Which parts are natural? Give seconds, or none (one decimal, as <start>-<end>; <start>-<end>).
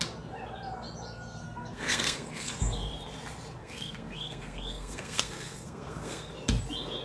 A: 0.0-1.4; 2.9-3.6; 6.3-7.0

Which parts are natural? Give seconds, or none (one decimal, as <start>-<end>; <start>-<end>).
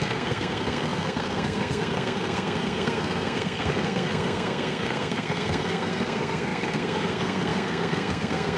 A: none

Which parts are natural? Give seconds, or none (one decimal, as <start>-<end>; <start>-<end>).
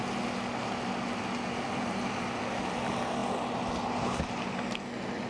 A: 0.0-5.3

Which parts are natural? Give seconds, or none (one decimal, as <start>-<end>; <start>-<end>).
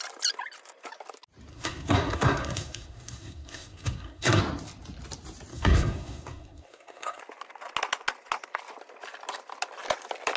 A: 0.0-1.5; 4.4-5.5; 7.2-10.4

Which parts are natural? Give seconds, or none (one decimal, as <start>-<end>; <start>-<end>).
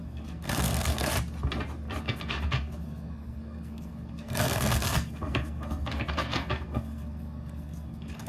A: 1.1-2.0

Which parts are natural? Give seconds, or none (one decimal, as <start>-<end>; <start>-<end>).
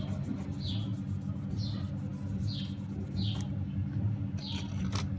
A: 0.0-5.2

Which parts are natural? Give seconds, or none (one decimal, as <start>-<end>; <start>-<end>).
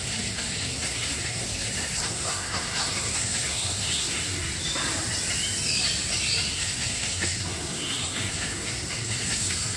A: 4.5-6.5